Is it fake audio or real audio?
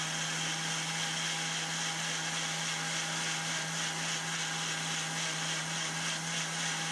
real